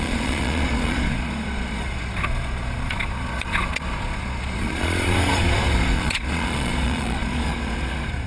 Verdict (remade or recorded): remade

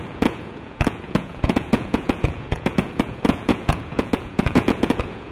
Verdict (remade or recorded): remade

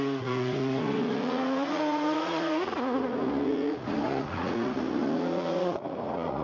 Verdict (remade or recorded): remade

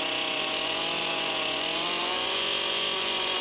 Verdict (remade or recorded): remade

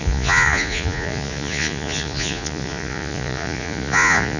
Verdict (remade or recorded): remade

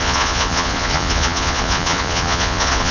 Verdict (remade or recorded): remade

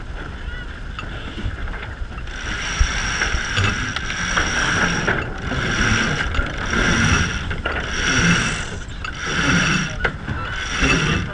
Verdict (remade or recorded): recorded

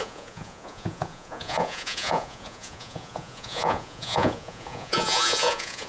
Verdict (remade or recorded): remade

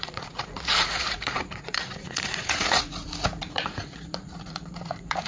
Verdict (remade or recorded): remade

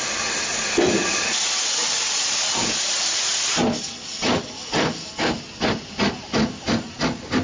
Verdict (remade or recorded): recorded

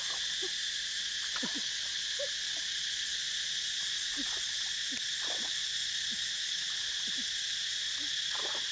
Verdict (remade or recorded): recorded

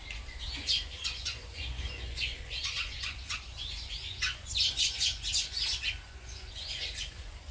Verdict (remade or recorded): remade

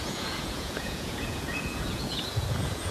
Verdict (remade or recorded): remade